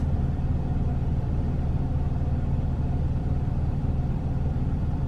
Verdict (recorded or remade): remade